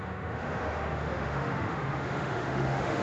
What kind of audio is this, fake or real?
fake